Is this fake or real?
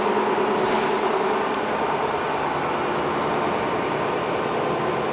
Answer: real